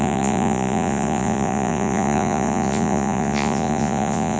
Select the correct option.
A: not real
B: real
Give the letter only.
A